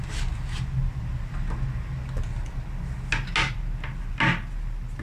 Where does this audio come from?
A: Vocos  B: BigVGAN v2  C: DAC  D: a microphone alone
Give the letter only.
D